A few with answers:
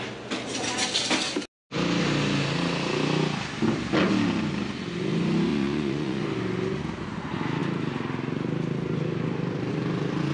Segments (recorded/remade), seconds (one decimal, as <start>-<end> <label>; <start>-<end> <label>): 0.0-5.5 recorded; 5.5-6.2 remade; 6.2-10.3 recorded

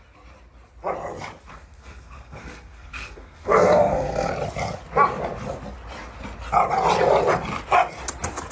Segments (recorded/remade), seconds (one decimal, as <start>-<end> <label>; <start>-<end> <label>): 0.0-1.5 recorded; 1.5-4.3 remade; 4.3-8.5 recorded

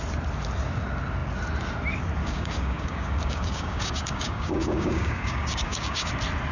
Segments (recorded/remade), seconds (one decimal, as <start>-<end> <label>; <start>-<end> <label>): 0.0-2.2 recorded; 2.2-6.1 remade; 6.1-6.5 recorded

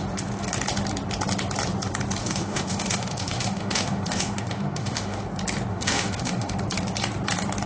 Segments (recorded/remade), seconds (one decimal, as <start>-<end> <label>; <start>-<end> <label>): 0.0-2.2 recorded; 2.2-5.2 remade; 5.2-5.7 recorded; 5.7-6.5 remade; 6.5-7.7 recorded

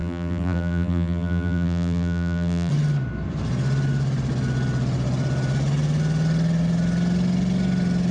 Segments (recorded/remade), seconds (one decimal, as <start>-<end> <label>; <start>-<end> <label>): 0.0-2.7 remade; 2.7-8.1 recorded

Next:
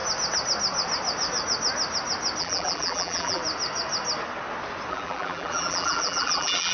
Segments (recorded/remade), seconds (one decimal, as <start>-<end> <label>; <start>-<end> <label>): 0.0-2.4 recorded; 2.4-3.4 remade; 3.4-4.9 recorded; 4.9-6.7 remade